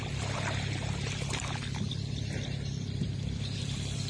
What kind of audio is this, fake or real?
fake